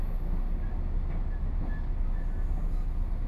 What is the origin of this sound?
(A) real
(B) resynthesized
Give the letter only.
A